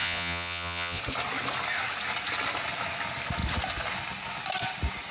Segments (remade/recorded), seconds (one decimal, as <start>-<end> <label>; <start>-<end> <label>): 0.0-1.0 remade; 1.0-5.1 recorded